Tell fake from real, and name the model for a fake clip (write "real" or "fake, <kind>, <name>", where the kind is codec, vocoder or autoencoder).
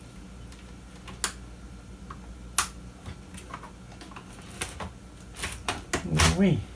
real